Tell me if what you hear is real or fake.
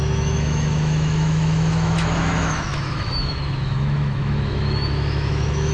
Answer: fake